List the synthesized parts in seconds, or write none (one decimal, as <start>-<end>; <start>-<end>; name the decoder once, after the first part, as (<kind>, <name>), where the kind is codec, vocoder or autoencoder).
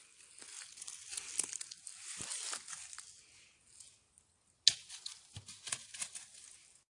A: none